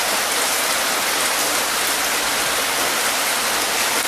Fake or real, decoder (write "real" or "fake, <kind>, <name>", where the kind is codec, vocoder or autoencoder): real